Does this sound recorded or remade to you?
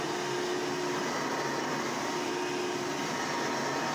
recorded